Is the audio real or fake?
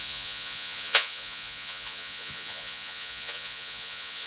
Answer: fake